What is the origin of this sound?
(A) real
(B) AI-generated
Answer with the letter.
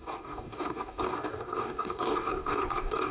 B